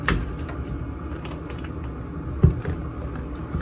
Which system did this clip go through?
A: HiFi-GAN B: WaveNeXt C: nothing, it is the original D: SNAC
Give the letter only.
C